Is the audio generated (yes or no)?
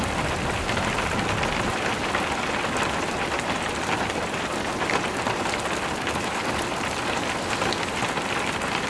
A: no